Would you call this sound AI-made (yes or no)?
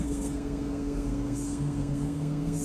yes